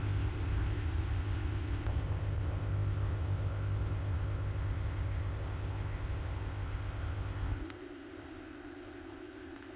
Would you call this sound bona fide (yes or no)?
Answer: no